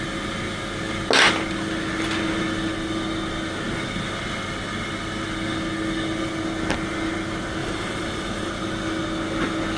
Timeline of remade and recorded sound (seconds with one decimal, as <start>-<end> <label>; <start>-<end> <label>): 0.0-7.6 recorded; 7.6-8.5 remade; 8.5-9.8 recorded